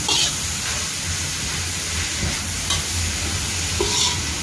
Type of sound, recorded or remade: recorded